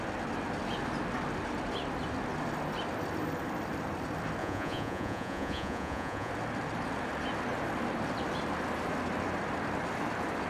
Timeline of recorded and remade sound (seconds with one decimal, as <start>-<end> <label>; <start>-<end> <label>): 0.0-4.4 recorded; 4.4-6.3 remade; 6.3-10.5 recorded